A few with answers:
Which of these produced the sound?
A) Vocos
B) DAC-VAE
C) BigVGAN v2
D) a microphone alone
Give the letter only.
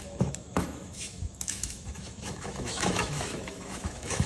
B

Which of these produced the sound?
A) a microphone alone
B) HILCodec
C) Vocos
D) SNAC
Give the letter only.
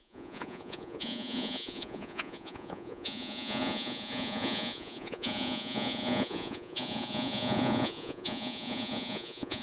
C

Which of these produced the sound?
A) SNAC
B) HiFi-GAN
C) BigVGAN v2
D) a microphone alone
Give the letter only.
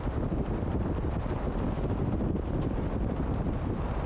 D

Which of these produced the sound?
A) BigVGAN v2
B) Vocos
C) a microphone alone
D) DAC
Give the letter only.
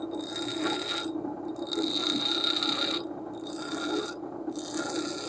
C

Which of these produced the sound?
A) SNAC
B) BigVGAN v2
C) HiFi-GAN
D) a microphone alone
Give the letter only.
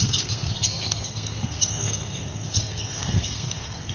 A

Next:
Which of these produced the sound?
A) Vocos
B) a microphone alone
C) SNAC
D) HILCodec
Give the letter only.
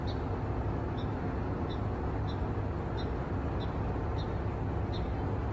B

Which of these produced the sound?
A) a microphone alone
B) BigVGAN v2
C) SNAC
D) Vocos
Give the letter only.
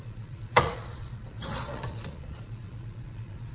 D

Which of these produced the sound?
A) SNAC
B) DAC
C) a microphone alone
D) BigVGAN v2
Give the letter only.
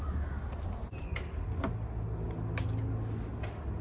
C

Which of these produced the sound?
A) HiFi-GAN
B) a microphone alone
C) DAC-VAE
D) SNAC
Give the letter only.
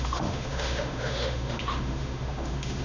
C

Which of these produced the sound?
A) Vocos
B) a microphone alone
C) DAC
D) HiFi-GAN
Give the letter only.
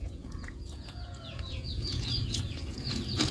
A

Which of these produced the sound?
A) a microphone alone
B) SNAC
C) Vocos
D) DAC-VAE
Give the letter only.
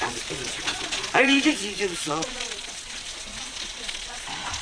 C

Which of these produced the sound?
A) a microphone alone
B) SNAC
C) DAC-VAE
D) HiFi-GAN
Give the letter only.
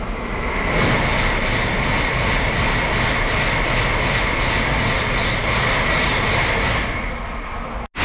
A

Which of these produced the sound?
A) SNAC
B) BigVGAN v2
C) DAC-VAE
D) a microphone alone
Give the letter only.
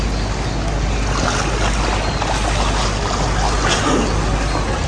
D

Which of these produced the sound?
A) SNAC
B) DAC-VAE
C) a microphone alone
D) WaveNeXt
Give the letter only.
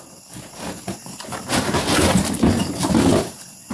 C